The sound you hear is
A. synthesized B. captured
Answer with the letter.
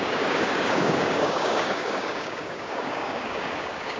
A